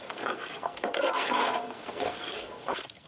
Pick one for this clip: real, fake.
fake